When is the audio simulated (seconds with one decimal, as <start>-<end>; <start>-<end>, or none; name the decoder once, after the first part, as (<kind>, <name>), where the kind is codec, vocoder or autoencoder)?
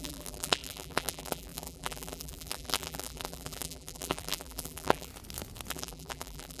0.0-5.1 (vocoder, BigVGAN v2); 5.7-6.6